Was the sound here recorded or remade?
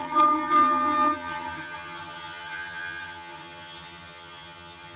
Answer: remade